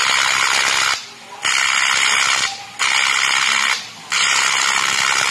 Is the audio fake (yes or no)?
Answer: no